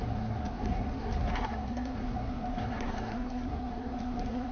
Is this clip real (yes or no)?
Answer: no